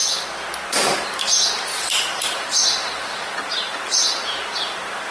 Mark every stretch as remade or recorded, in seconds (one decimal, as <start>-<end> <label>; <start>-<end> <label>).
0.0-0.7 recorded; 0.7-5.1 remade